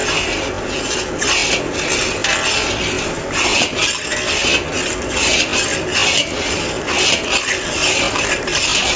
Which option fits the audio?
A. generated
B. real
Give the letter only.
B